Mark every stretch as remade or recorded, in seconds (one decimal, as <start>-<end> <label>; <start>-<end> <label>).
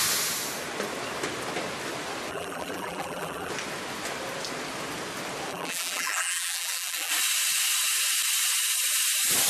0.0-2.3 recorded; 2.3-3.5 remade; 3.5-5.5 recorded; 5.5-7.1 remade; 7.1-9.5 recorded